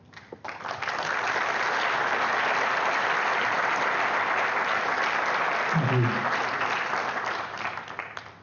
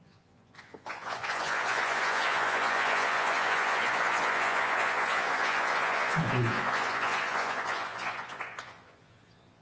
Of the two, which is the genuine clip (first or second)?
first